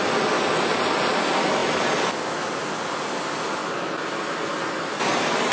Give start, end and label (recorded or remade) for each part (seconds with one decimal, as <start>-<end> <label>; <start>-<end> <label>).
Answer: 0.0-5.5 recorded